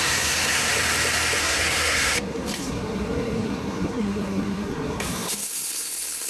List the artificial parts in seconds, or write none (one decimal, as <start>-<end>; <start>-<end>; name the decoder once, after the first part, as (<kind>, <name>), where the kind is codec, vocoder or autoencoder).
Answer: 0.0-0.7 (codec, SNAC); 1.4-6.3